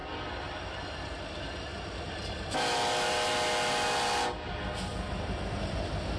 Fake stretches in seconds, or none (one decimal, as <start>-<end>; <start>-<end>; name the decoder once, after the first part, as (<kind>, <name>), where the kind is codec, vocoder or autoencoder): none